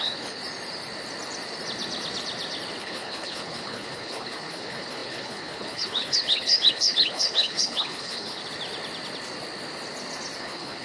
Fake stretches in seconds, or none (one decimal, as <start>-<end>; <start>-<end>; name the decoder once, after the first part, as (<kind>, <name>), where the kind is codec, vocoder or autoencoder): 0.0-0.4 (codec, HILCodec); 2.8-8.4; 10.4-10.8